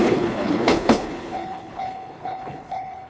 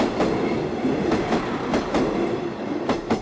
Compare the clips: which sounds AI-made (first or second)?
first